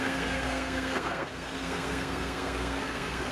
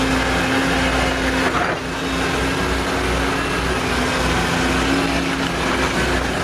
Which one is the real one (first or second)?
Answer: second